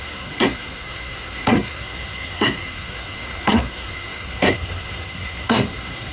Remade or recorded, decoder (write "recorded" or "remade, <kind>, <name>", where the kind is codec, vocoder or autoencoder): remade, codec, SNAC